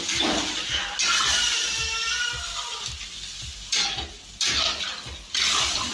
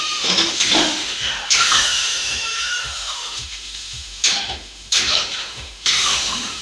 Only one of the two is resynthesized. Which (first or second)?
second